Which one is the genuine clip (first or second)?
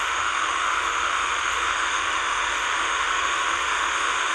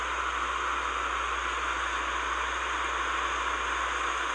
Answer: second